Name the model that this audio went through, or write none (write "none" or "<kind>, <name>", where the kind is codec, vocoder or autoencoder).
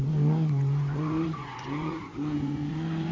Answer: vocoder, Vocos